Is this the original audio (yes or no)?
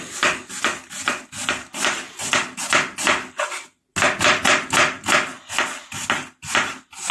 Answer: yes